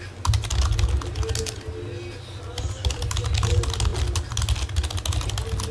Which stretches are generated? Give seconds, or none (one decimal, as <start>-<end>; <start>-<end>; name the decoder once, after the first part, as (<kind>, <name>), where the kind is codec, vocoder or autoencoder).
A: none